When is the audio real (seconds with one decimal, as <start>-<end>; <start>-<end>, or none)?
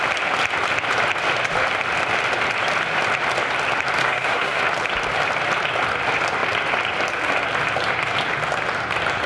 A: 0.0-4.0; 4.6-9.3